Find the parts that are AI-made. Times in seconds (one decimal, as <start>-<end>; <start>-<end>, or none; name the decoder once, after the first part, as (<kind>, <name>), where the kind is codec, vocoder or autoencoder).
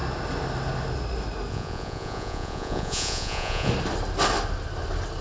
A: 1.5-3.7 (vocoder, Vocos)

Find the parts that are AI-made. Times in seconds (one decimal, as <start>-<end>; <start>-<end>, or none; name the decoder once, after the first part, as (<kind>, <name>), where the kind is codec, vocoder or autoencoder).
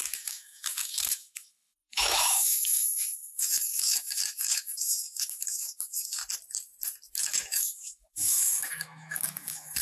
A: 0.0-6.2 (autoencoder, DAC-VAE); 7.2-9.8